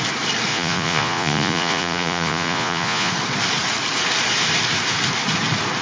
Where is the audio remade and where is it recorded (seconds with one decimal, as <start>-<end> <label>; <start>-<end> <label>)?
0.0-0.5 recorded; 0.5-3.1 remade; 3.1-5.8 recorded